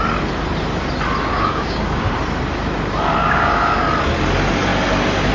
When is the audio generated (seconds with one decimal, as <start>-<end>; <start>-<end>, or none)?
1.3-2.1; 3.2-3.8